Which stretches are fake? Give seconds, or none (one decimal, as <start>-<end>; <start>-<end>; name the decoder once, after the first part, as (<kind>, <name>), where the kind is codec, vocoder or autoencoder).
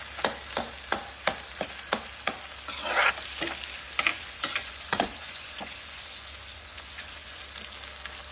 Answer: 4.1-7.4 (vocoder, Vocos)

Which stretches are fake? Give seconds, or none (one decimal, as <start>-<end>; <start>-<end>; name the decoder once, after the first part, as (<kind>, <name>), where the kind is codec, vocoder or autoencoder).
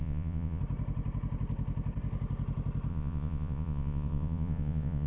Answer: 0.0-0.6 (vocoder, Vocos); 2.9-5.1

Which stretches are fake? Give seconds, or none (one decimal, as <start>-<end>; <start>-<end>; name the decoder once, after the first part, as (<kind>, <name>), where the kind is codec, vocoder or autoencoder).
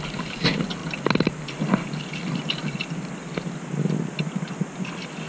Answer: none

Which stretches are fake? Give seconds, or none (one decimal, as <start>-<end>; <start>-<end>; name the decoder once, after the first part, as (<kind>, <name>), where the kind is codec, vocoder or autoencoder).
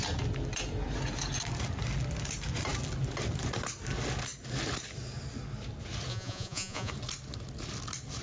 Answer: 6.1-6.9 (vocoder, Vocos)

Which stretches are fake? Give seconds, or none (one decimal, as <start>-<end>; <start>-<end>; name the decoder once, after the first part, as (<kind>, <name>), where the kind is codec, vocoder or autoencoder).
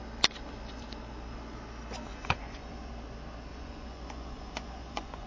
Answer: 2.1-2.9 (vocoder, Vocos); 3.5-5.3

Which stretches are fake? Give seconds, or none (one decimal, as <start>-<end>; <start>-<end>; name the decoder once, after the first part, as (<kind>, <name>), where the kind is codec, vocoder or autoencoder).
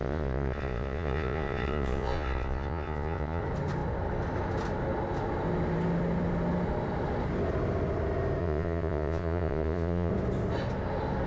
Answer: 0.0-3.4 (vocoder, Vocos); 8.4-10.1